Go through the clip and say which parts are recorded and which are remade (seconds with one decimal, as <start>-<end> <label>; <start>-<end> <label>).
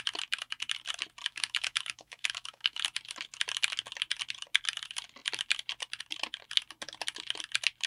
0.0-1.2 recorded; 1.2-2.8 remade; 2.8-7.9 recorded